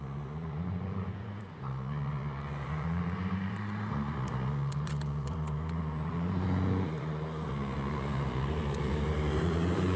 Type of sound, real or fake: fake